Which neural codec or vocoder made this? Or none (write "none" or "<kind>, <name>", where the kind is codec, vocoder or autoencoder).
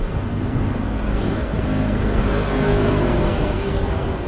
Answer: codec, SNAC